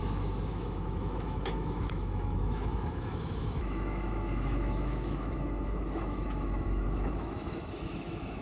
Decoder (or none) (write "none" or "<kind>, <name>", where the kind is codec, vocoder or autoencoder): autoencoder, DAC-VAE